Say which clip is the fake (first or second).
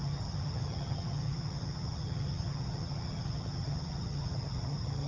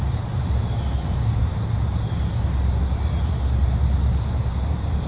first